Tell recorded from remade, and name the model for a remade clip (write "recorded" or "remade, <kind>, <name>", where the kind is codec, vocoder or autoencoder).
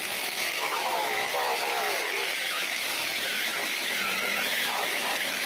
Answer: remade, autoencoder, DAC-VAE